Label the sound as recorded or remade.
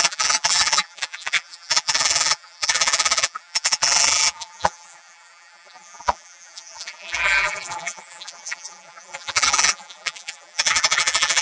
remade